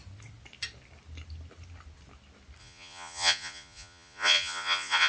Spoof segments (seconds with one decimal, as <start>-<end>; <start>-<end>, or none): 2.6-5.1